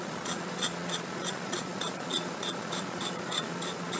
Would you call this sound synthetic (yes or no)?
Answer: yes